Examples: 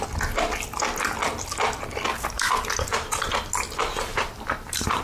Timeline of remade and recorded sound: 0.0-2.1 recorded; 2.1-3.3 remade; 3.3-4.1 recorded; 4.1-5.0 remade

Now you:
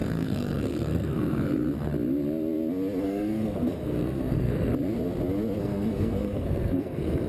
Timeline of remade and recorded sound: 0.0-1.9 remade; 1.9-3.0 recorded; 3.0-4.7 remade; 4.7-5.6 recorded; 5.6-7.3 remade

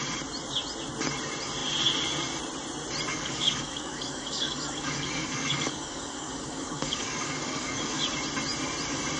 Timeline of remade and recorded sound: 0.0-3.1 recorded; 3.1-8.0 remade; 8.0-9.2 recorded

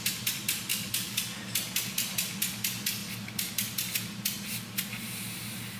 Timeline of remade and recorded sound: 0.0-0.7 recorded; 0.7-1.2 remade; 1.2-5.8 recorded